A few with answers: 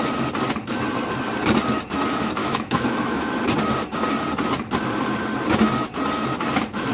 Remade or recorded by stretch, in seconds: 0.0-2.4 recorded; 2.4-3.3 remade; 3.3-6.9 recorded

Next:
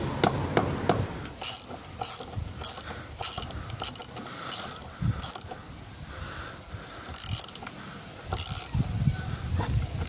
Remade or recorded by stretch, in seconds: 0.0-10.1 recorded

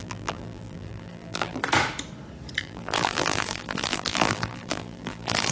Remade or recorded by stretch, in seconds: 0.0-1.6 remade; 1.6-2.6 recorded; 2.6-5.5 remade